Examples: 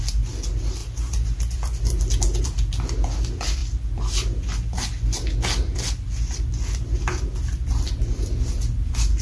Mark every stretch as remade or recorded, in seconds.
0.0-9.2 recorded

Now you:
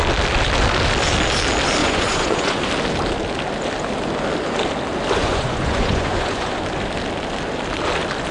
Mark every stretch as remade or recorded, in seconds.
0.0-1.8 recorded; 1.8-2.7 remade; 2.7-5.2 recorded; 5.2-6.6 remade; 6.6-8.3 recorded

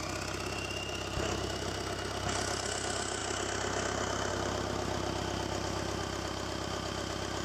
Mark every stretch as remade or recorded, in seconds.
0.0-7.4 recorded